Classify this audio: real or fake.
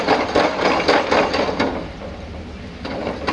real